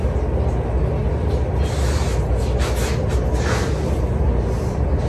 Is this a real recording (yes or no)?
yes